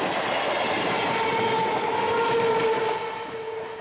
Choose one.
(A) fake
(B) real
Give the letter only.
B